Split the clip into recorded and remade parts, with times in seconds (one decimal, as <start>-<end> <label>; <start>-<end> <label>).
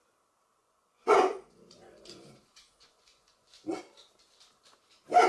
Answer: 0.0-0.6 recorded; 0.6-3.8 remade; 3.8-5.3 recorded